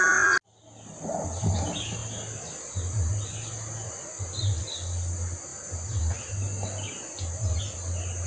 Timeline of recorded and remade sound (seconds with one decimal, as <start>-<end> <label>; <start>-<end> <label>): 0.0-8.3 recorded